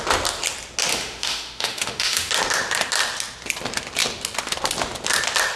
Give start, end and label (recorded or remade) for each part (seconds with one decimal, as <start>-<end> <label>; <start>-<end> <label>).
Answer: 0.0-0.9 recorded; 0.9-2.3 remade; 2.3-5.6 recorded